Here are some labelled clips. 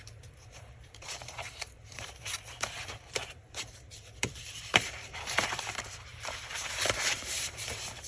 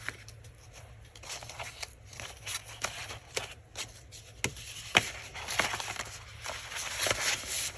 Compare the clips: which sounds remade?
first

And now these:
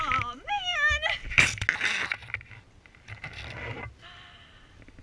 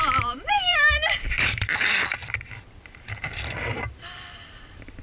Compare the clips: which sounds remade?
second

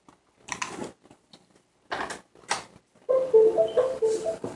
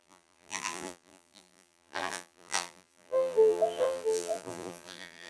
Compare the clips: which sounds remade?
second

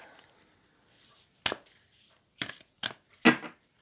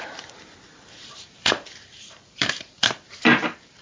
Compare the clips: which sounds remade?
second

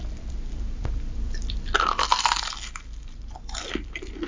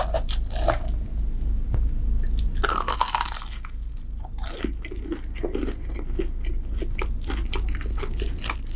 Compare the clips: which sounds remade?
first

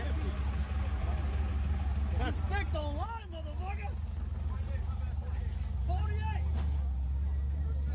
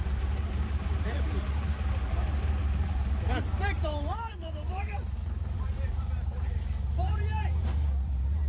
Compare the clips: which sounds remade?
second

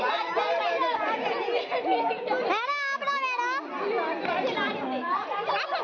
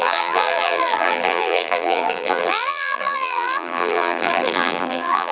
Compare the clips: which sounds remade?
second